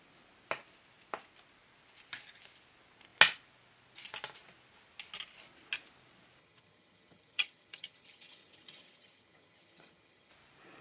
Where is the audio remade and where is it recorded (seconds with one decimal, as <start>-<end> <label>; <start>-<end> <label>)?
0.0-6.4 recorded; 6.4-10.3 remade; 10.3-10.8 recorded